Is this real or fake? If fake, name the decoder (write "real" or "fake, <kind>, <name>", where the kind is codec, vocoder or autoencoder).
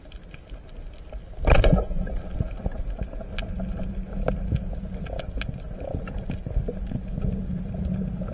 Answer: real